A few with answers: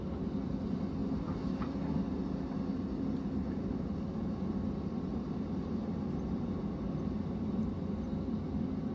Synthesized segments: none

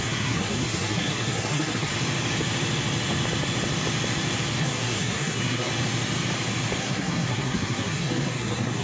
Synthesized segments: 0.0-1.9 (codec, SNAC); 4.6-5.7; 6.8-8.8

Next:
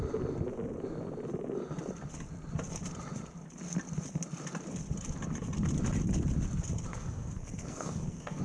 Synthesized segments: 6.9-8.4 (codec, SNAC)

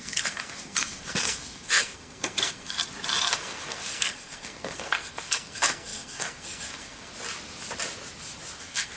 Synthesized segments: 0.0-2.8 (codec, SNAC); 3.3-7.1; 8.6-9.0

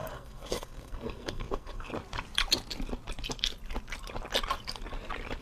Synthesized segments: 0.0-1.9 (codec, SNAC)